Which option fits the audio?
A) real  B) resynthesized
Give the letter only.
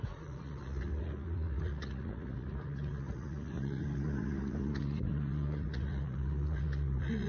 B